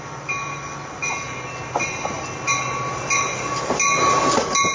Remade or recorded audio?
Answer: recorded